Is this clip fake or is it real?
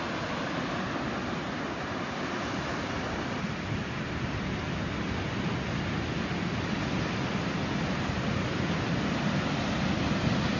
real